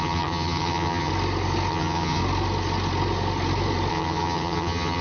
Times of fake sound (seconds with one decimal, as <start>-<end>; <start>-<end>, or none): 0.0-1.1; 1.7-2.2; 3.9-5.0